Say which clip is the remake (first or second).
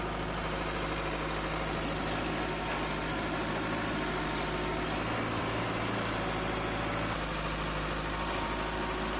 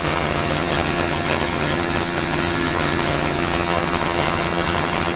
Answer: second